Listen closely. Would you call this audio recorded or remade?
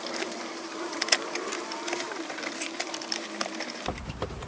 remade